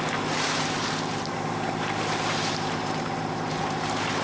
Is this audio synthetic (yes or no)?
yes